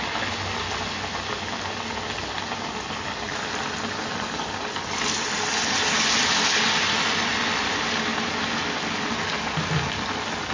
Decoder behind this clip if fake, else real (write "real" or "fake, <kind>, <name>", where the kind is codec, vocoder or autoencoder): real